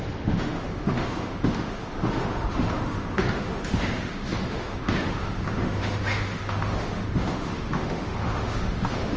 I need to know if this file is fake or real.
fake